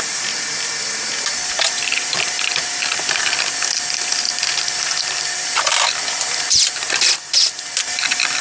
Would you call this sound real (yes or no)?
no